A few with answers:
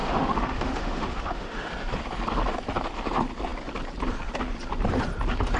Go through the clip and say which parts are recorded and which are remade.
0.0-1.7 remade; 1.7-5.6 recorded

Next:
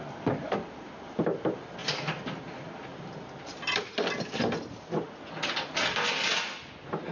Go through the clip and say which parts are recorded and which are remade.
0.0-7.1 recorded

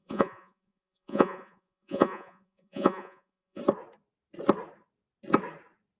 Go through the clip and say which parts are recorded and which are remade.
0.0-3.6 remade; 3.6-6.0 recorded

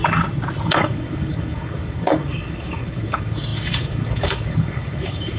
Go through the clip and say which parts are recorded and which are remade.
0.0-0.7 recorded; 0.7-5.4 remade